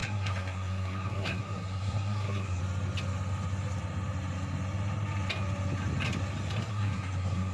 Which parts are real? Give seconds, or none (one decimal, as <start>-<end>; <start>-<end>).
2.6-6.7